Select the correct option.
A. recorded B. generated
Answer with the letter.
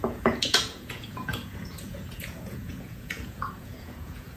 B